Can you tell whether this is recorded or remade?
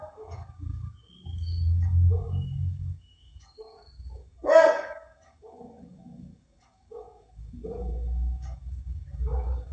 remade